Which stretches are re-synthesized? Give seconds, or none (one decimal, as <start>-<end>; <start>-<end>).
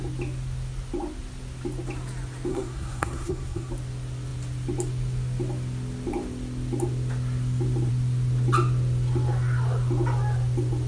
2.5-3.7